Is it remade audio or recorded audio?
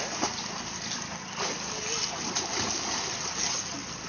recorded